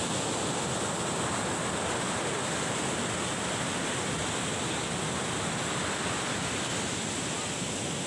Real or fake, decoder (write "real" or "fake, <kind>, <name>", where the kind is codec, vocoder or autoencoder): real